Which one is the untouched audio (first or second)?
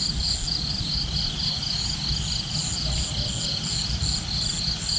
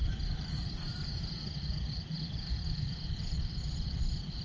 first